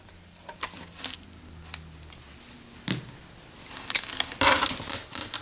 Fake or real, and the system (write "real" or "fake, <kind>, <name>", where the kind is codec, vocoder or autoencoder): real